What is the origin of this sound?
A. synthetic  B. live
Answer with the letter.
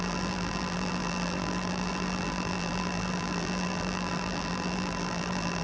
A